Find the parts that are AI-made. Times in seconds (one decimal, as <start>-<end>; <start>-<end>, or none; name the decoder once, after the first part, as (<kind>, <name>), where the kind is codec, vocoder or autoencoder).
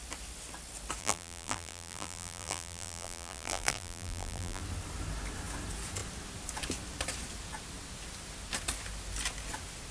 1.0-4.6 (vocoder, BigVGAN v2)